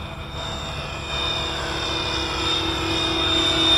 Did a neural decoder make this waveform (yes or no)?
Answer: no